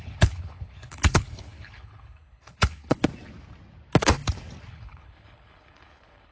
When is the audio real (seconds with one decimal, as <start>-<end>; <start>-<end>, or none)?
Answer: 3.1-4.7

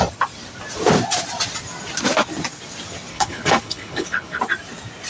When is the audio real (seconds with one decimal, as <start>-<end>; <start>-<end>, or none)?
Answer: 0.0-3.1; 4.4-5.1